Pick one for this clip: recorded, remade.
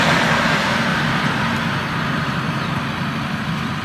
recorded